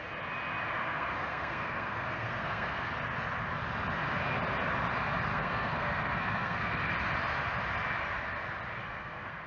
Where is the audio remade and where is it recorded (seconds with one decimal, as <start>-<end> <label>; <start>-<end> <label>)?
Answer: 0.0-0.8 recorded; 0.8-2.9 remade; 2.9-5.3 recorded; 5.3-6.9 remade; 6.9-8.8 recorded; 8.8-9.5 remade